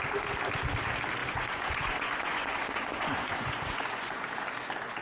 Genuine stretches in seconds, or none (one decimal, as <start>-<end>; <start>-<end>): 0.0-1.2; 4.2-5.0

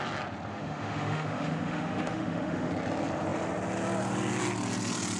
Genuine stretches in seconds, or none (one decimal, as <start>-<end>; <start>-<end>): 0.0-0.5; 2.7-5.2

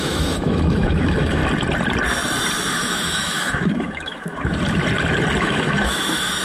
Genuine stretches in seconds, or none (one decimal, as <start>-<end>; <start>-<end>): 1.4-2.7; 4.5-5.4

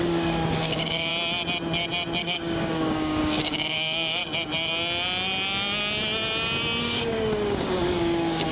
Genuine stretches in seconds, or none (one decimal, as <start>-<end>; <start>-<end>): 1.1-2.2; 4.2-6.8

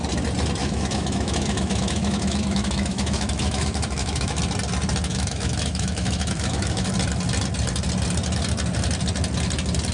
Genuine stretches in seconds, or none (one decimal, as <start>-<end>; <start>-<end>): 0.0-0.6; 4.4-5.1; 6.9-9.9

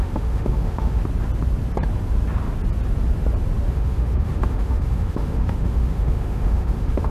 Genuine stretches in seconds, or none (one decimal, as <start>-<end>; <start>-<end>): 1.0-3.7

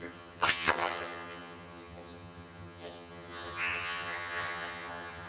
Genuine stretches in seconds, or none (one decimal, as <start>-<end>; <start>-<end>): none

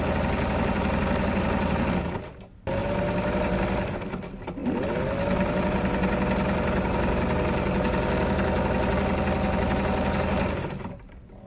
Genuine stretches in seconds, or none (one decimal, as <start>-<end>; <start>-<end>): 0.0-11.5